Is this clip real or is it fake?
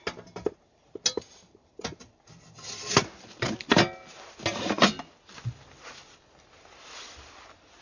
real